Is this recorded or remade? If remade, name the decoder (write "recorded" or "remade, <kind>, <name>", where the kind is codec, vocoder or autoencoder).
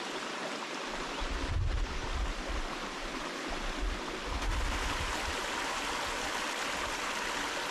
recorded